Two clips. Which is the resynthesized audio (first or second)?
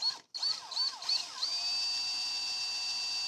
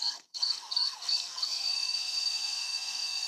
second